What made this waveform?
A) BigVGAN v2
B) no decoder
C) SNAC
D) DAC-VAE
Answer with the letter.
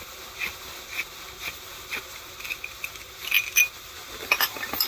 B